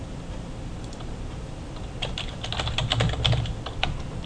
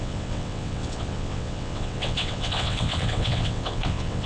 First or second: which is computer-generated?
second